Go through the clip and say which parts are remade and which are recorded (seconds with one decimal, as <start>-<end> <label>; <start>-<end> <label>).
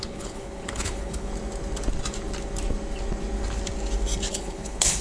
0.0-1.3 remade; 1.3-4.3 recorded; 4.3-5.0 remade